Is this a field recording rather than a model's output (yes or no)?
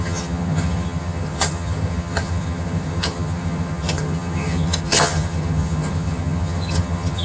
no